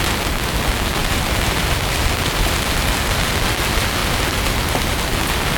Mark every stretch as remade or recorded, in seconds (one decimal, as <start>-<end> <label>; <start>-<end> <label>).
0.0-1.0 recorded; 1.0-1.6 remade; 1.6-2.8 recorded; 2.8-3.3 remade; 3.3-4.0 recorded; 4.0-4.9 remade; 4.9-5.6 recorded